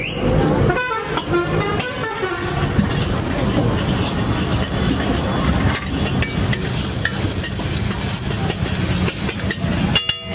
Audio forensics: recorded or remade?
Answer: recorded